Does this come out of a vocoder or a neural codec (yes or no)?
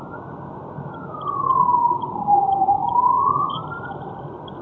no